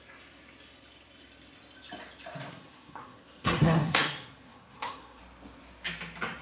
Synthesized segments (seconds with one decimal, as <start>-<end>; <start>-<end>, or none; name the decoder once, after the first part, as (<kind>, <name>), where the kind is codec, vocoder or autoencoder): 2.5-5.2 (codec, SNAC)